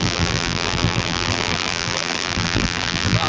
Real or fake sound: fake